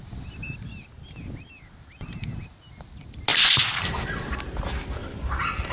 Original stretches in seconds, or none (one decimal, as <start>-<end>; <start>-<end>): 0.0-3.3; 4.4-5.0